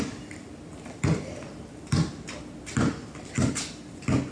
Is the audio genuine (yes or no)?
yes